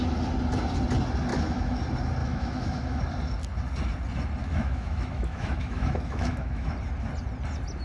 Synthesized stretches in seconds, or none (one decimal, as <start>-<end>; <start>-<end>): 1.3-1.8; 2.2-3.0; 4.4-6.7